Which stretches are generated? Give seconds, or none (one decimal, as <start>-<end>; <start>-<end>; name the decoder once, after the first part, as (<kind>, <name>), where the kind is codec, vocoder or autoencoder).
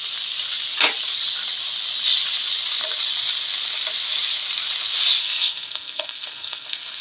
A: 5.2-7.0 (codec, SNAC)